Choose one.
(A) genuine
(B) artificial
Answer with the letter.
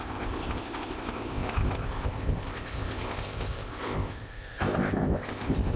B